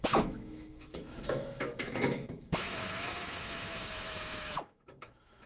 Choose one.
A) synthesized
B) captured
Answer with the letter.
A